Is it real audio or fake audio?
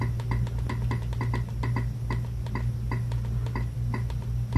real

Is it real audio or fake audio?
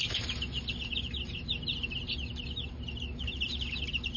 real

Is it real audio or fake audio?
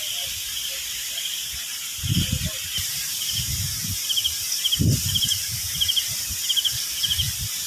fake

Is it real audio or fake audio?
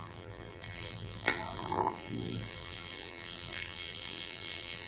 fake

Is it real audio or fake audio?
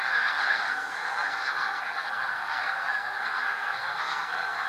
fake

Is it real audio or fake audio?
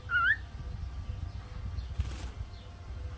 real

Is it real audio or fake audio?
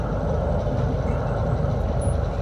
real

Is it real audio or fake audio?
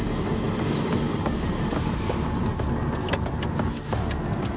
real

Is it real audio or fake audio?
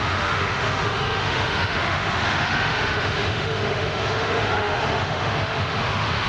fake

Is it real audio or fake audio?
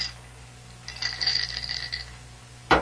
real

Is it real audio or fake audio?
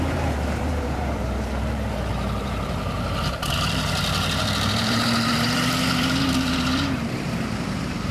fake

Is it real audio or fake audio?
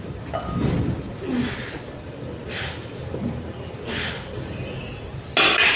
real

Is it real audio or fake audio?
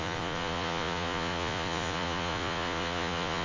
fake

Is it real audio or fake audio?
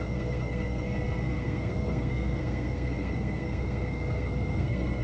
fake